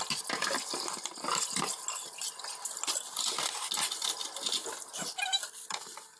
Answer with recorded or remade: recorded